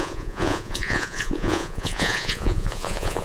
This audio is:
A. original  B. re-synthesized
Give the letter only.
B